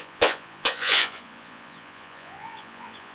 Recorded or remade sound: remade